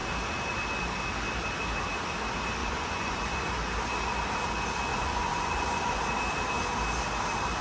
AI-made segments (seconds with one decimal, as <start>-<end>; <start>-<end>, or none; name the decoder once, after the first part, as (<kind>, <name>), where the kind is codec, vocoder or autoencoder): 2.6-3.5 (vocoder, Vocos); 4.9-6.0